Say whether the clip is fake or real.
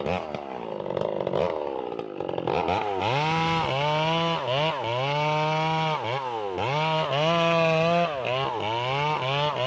real